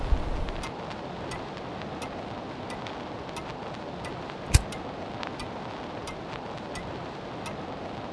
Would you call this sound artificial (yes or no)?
no